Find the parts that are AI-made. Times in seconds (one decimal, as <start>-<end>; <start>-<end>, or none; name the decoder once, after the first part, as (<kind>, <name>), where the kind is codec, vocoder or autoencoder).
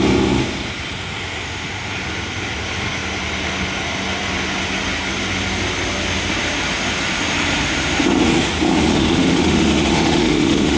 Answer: 8.9-10.8 (autoencoder, DAC-VAE)